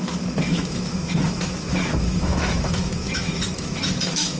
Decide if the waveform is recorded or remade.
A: remade